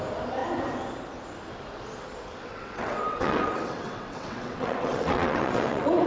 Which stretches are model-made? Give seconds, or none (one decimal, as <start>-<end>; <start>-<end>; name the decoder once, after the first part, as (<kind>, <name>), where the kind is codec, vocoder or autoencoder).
2.4-6.1 (vocoder, WaveNeXt)